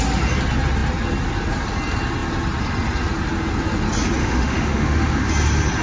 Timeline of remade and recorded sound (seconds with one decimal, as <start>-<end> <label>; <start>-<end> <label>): 0.0-4.2 recorded; 4.2-5.3 remade; 5.3-5.8 recorded